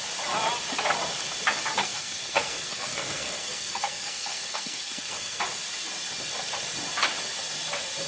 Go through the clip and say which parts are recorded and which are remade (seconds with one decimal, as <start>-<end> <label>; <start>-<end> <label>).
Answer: 0.0-1.8 recorded; 1.8-5.4 remade; 5.4-8.1 recorded